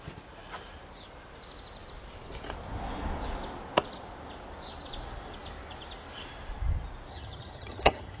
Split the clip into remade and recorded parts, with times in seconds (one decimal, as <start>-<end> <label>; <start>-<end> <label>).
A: 0.0-7.1 recorded; 7.1-8.2 remade

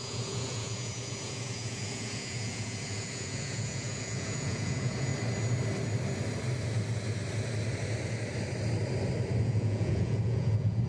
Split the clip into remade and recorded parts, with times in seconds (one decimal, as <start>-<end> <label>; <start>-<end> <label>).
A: 0.0-5.1 remade; 5.1-9.4 recorded; 9.4-10.9 remade